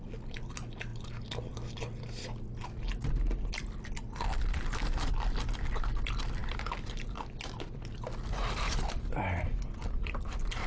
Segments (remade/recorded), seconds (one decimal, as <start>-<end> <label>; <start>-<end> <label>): 0.0-10.7 recorded